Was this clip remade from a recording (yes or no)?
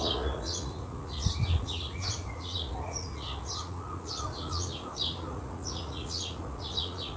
yes